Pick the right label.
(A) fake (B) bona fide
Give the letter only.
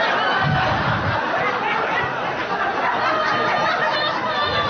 B